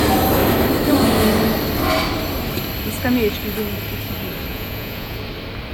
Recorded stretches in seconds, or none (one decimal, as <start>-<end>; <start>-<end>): 0.0-4.5; 5.2-5.7